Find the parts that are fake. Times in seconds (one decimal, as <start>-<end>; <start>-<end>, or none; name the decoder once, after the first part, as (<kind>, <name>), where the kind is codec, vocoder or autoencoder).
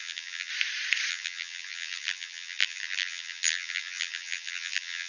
0.0-0.5 (vocoder, BigVGAN v2); 1.1-5.1